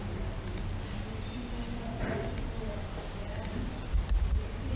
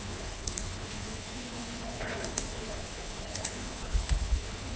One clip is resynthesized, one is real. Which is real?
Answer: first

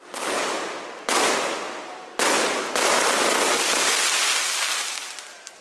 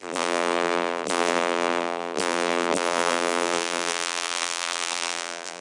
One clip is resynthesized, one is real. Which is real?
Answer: first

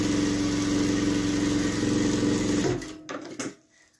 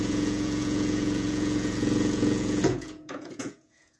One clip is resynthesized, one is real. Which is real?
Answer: first